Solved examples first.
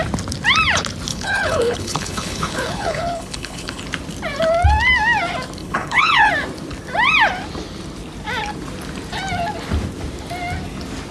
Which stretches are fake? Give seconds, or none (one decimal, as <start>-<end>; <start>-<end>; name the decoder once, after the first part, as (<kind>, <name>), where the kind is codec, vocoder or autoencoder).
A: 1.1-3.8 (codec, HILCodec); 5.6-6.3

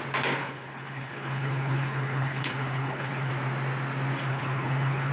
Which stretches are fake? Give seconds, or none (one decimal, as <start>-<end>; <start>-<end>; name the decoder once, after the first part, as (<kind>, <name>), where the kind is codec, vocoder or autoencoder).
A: 0.4-3.3 (codec, HILCodec); 4.3-5.1

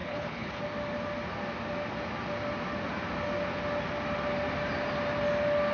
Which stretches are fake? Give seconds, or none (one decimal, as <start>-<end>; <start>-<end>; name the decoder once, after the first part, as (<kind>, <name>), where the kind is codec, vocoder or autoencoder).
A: 0.0-0.6 (codec, HILCodec)

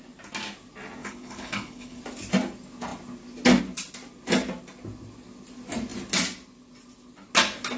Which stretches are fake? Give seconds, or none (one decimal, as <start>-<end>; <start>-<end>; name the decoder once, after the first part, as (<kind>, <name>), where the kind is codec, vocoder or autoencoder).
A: 1.0-2.0 (codec, HILCodec)

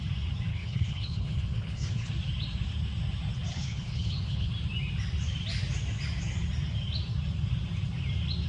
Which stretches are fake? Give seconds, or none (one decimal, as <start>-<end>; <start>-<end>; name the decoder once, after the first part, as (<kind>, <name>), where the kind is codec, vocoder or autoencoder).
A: 0.5-2.1 (codec, HILCodec); 3.5-4.5